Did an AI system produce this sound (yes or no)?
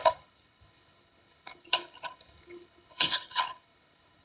yes